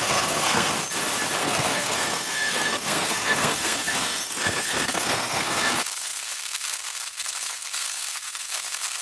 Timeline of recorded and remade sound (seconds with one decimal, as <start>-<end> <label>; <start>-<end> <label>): 0.0-0.7 remade; 0.7-1.4 recorded; 1.4-9.0 remade